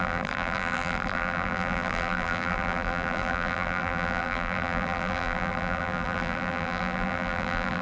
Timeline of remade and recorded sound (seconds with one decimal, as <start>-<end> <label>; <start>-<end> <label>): 0.0-7.8 remade